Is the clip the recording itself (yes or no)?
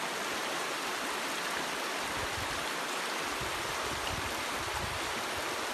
yes